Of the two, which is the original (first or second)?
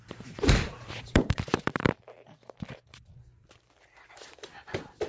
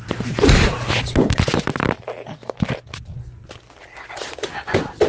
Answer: second